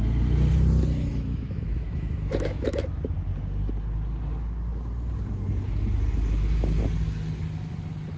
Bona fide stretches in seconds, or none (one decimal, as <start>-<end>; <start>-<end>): 0.0-1.1; 3.0-8.2